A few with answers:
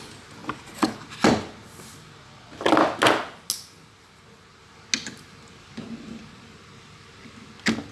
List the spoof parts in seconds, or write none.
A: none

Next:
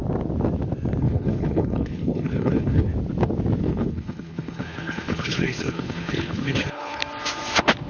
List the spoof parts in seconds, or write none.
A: 1.0-2.9 (codec, HILCodec); 3.6-7.0